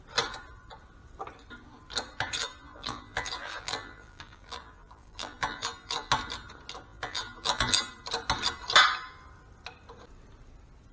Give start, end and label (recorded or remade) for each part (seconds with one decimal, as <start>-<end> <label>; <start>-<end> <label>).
0.0-2.4 recorded; 2.4-6.1 remade; 6.1-6.9 recorded; 6.9-7.9 remade; 7.9-10.9 recorded